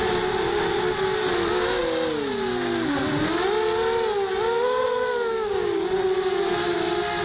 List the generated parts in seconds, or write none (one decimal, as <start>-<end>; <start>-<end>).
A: 5.3-5.8